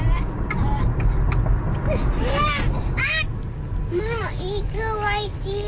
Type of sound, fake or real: real